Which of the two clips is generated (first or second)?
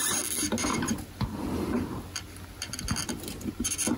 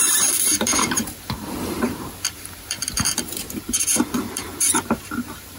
second